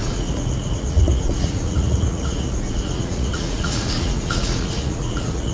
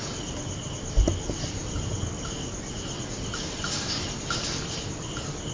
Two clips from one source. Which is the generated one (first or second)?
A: first